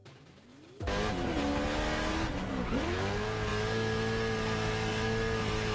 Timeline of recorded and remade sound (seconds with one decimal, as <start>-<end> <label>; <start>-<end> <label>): 0.0-5.7 recorded